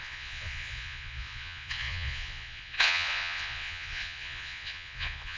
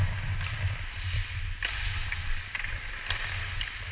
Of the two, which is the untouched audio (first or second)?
second